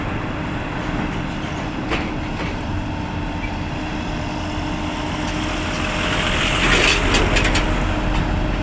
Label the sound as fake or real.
real